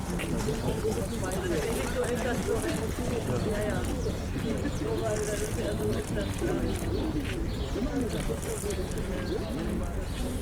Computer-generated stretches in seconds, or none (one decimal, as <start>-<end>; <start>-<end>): none